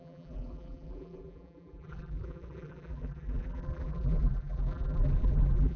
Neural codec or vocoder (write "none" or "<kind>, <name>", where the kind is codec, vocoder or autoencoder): vocoder, BigVGAN v2